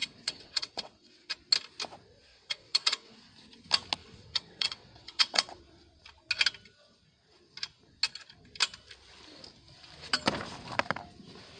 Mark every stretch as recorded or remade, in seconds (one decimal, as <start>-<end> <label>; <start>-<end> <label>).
0.0-1.3 remade; 1.3-2.3 recorded; 2.3-3.3 remade; 3.3-4.0 recorded; 4.0-5.6 remade; 5.6-11.6 recorded